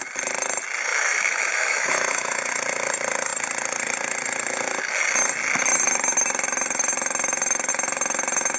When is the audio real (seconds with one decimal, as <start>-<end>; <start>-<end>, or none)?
0.0-0.9; 2.5-8.6